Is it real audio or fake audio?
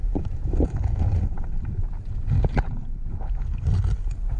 real